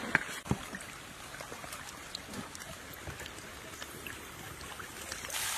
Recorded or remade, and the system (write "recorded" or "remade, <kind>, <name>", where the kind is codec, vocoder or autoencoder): recorded